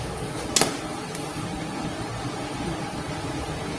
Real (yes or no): yes